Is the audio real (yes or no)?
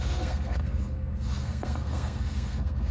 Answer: no